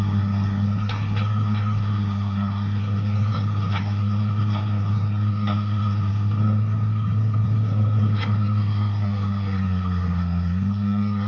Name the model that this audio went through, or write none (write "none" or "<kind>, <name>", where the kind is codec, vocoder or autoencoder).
codec, SNAC